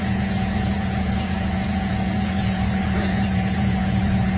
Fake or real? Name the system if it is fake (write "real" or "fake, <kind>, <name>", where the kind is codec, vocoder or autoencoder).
fake, vocoder, Vocos